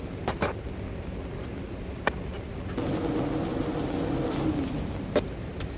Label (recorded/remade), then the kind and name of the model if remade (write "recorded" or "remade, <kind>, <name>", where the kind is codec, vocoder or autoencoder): recorded